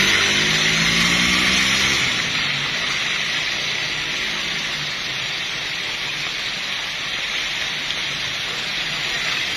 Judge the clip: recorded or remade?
recorded